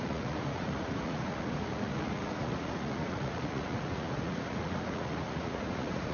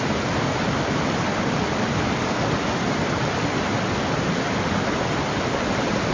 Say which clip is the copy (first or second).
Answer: first